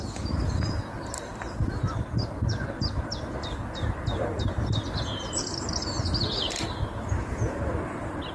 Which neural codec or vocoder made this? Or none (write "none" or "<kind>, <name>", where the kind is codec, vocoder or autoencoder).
none